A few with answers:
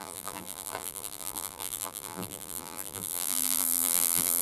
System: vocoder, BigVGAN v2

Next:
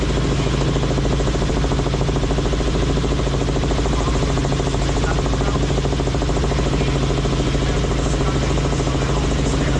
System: none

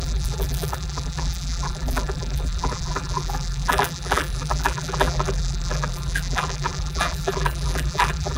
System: vocoder, BigVGAN v2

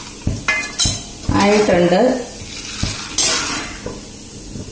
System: none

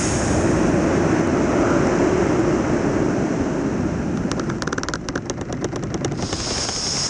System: none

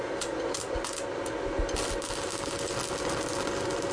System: none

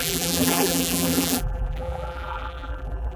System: vocoder, BigVGAN v2